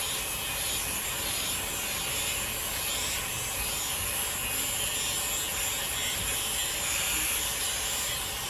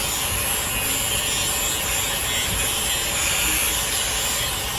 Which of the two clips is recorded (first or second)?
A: second